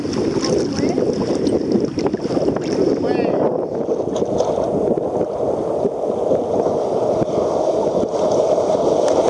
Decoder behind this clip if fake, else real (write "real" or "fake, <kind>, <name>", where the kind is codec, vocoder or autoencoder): real